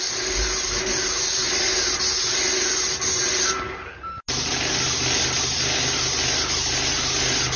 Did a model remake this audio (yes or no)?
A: no